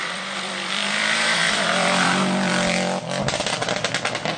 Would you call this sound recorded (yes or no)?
no